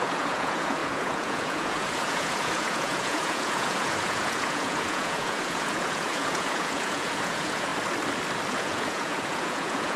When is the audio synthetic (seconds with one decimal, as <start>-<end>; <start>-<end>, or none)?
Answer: 0.0-7.7; 8.5-10.0